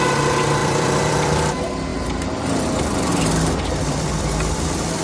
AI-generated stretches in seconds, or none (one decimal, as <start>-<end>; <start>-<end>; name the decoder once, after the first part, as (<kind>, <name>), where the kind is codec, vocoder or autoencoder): 0.6-1.5 (vocoder, BigVGAN v2); 3.1-5.0